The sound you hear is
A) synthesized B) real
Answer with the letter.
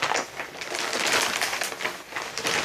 B